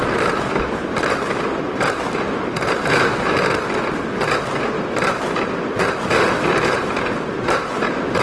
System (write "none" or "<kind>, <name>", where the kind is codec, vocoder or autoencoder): none